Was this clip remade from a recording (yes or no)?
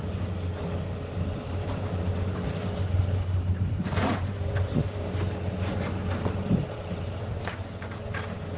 no